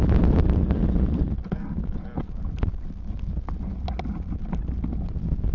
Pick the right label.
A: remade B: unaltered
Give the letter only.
B